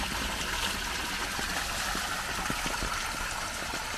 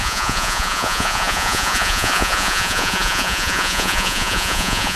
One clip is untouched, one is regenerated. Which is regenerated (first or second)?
second